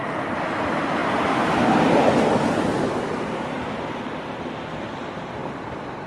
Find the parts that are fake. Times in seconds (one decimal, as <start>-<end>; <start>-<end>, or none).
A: none

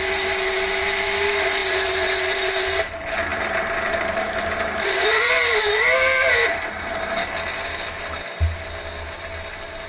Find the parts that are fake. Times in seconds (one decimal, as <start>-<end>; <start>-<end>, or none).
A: 3.3-6.9

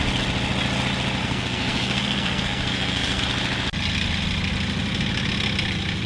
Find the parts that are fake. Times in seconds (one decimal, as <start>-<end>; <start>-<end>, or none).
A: 1.2-3.2

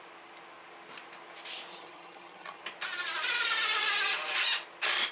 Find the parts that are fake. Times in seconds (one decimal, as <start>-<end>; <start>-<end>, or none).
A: 1.7-2.6